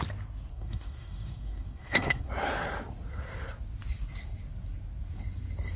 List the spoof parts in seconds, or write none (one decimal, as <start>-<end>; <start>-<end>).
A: 0.5-2.3